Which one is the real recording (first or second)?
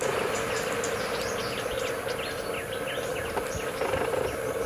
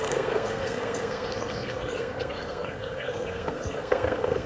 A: first